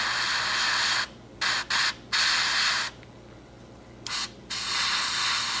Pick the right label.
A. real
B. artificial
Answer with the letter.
A